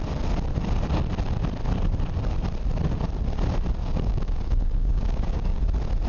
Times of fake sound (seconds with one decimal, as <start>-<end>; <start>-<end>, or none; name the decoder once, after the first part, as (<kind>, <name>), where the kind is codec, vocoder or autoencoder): 3.8-5.6 (codec, DAC)